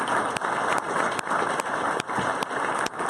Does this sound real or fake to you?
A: real